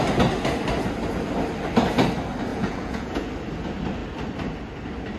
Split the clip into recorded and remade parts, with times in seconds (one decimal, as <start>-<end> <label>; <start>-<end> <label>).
0.0-2.5 recorded; 2.5-3.3 remade; 3.3-5.2 recorded